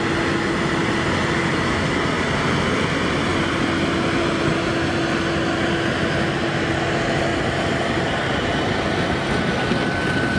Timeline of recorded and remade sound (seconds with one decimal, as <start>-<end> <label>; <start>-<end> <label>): 0.0-10.4 recorded